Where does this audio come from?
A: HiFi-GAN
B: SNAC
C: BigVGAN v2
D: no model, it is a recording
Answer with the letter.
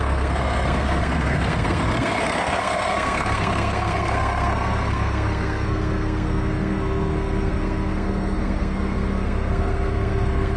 B